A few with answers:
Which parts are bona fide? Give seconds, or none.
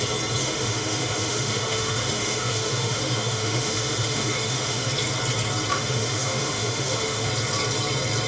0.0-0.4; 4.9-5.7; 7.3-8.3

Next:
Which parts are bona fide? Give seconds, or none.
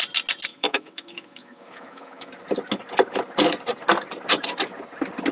0.0-0.5; 2.3-5.3